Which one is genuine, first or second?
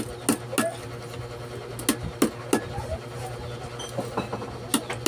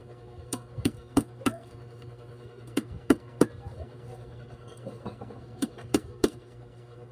first